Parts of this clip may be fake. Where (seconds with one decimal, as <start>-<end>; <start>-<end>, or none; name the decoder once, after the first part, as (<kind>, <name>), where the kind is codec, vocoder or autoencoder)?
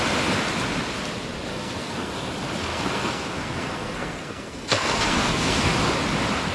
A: 1.5-2.1 (codec, SNAC); 2.7-5.7